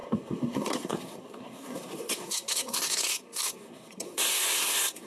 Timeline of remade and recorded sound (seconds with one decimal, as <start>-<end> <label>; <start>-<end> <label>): 0.0-5.1 remade